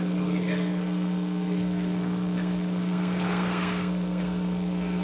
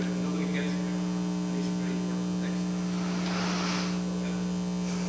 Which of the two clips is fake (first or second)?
first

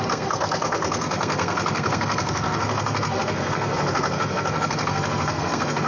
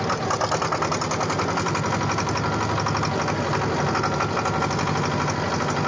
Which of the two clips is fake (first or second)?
first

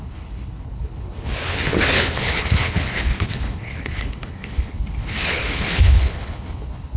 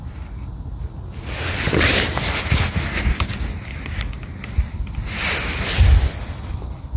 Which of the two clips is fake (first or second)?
first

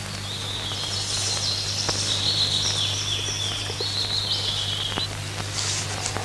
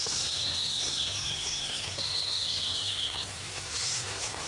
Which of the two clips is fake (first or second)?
second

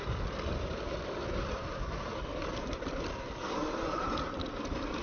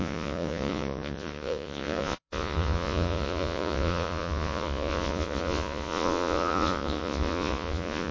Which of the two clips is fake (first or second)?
second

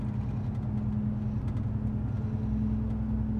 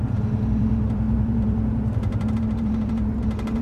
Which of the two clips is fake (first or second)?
second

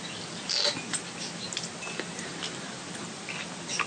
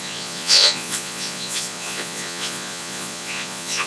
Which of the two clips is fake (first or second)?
second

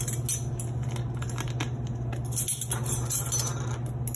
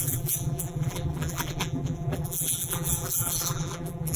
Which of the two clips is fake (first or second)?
second